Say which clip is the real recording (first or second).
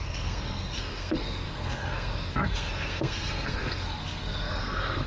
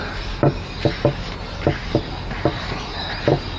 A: second